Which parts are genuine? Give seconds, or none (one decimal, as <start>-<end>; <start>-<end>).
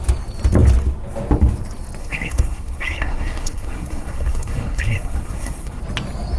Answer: 0.0-2.0; 5.8-6.4